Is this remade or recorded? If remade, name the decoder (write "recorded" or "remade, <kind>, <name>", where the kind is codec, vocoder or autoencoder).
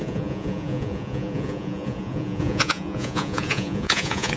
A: remade, vocoder, Vocos